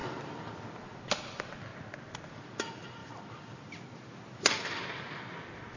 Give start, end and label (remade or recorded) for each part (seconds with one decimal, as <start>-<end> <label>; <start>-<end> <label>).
0.0-1.0 remade; 1.0-3.0 recorded; 3.0-4.6 remade; 4.6-5.8 recorded